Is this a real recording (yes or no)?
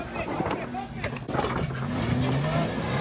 yes